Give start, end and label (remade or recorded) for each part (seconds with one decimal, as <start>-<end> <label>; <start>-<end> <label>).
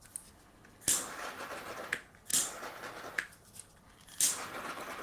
0.0-5.0 recorded